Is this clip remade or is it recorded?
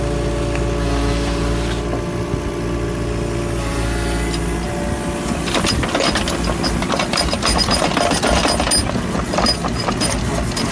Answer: recorded